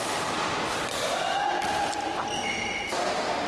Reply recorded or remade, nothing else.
recorded